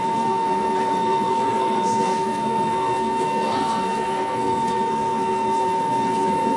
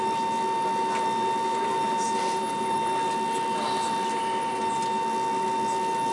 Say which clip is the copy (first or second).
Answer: first